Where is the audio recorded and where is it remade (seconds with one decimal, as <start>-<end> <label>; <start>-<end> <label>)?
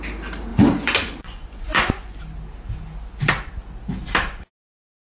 0.0-0.5 recorded; 0.5-2.2 remade; 2.2-5.1 recorded